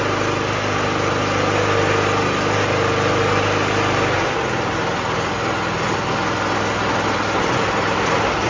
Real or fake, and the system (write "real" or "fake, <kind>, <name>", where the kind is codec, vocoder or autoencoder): real